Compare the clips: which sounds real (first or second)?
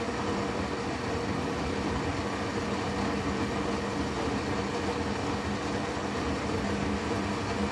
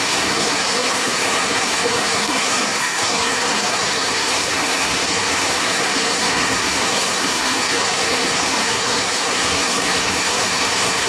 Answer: first